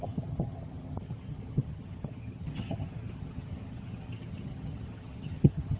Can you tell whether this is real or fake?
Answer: fake